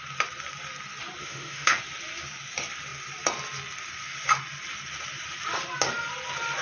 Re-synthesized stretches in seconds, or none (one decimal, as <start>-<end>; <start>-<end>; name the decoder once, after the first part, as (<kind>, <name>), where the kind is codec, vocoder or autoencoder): 1.2-1.8 (autoencoder, DAC-VAE)